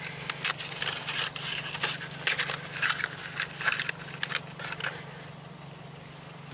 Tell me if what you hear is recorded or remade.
recorded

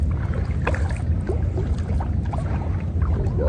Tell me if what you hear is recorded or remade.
recorded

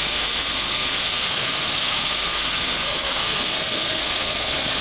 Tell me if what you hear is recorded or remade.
remade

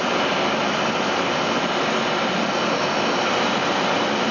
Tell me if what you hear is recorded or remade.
recorded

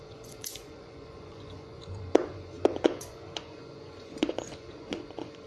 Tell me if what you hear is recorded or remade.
remade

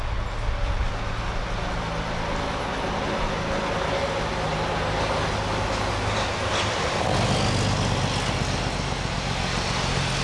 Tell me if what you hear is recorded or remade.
recorded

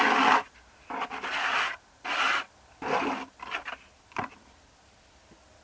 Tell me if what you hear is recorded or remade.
recorded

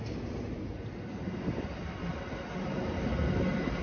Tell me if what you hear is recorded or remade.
recorded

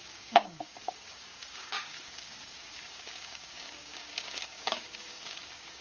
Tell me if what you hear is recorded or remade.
remade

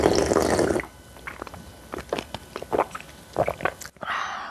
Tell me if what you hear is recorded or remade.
recorded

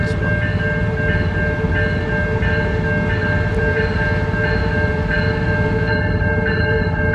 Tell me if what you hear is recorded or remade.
recorded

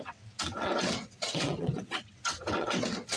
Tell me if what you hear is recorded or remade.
remade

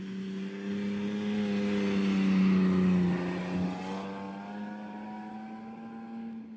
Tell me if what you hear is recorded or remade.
recorded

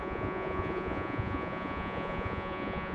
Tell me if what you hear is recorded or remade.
remade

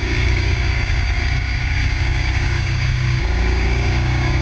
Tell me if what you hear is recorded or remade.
remade